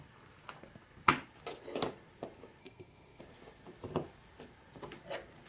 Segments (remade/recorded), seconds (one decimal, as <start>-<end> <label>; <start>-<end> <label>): 0.0-2.6 recorded; 2.6-3.2 remade; 3.2-5.5 recorded